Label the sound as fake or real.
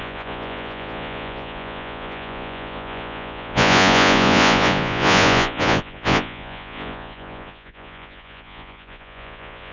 fake